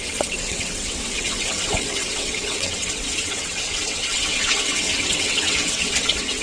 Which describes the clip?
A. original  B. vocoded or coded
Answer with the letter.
B